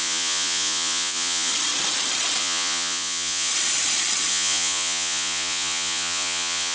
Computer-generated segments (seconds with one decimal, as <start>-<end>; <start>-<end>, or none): 0.0-1.5; 2.4-3.5; 4.3-6.7